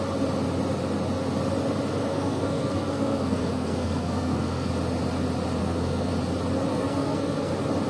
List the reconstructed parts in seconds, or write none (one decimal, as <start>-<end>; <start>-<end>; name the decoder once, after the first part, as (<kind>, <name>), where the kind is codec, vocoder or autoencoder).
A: 2.1-4.7 (codec, SNAC); 5.6-6.1; 6.7-7.5